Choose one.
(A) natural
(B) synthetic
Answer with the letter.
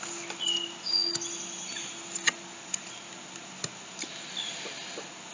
A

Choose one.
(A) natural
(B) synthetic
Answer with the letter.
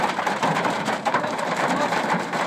B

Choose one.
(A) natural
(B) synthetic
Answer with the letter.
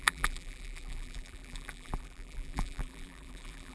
B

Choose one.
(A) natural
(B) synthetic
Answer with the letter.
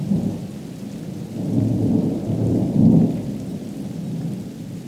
A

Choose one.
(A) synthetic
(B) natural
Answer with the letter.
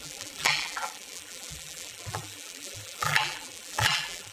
A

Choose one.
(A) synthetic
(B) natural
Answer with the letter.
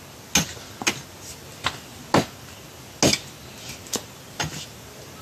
B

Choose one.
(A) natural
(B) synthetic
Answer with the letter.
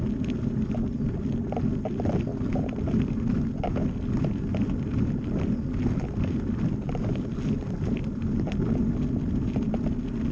A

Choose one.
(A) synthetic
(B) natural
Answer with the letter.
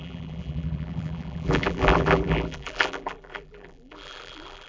A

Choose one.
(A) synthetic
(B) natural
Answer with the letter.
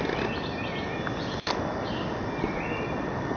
B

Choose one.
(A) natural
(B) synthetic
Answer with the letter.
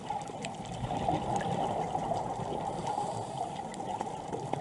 B